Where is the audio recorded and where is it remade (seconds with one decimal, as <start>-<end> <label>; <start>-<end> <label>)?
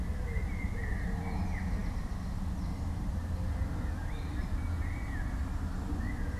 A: 0.0-6.4 recorded